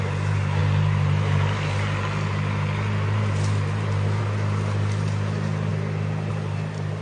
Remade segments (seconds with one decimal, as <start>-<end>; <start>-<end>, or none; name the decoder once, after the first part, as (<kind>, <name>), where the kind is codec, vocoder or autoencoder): none